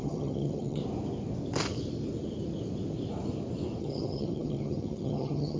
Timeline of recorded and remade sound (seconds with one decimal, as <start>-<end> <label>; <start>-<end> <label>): 0.0-0.8 remade; 0.8-3.8 recorded; 3.8-5.6 remade